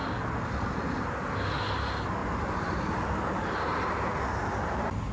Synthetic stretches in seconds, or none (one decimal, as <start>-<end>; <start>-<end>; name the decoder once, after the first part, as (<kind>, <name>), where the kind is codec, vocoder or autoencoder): 0.0-1.1 (vocoder, BigVGAN v2); 2.2-3.6